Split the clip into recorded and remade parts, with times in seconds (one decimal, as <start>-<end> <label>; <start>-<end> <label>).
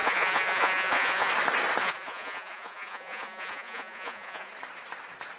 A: 0.0-1.3 remade; 1.3-1.8 recorded; 1.8-4.5 remade; 4.5-5.4 recorded